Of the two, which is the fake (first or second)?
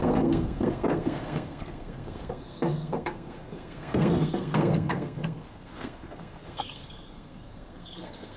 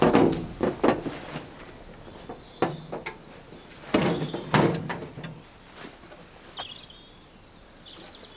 first